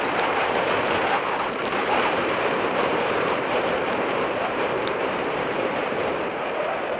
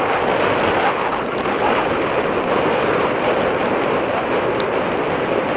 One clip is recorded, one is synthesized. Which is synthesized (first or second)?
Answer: first